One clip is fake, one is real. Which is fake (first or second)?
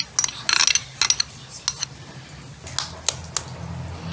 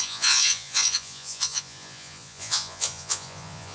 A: second